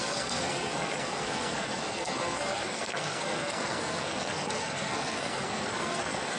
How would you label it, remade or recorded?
remade